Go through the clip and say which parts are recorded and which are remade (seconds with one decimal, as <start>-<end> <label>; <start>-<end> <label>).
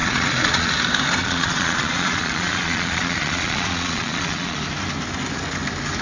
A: 0.0-0.7 remade; 0.7-1.2 recorded; 1.2-4.6 remade; 4.6-6.0 recorded